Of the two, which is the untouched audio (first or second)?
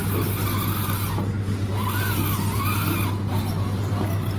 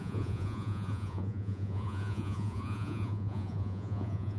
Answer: first